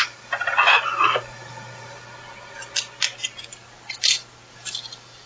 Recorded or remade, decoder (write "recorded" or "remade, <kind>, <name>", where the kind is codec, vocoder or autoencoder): recorded